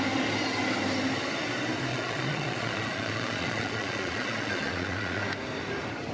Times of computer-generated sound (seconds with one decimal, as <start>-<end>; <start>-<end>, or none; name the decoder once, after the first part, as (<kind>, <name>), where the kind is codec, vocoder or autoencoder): 1.9-5.2 (vocoder, Vocos)